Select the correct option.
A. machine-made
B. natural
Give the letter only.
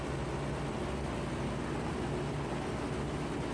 B